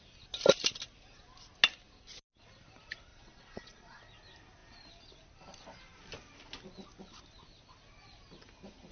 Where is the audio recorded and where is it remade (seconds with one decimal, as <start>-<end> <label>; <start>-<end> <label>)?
0.0-3.1 recorded; 3.1-4.0 remade; 4.0-8.9 recorded